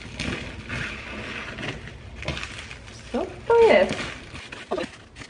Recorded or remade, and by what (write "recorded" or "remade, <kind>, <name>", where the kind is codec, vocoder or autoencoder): recorded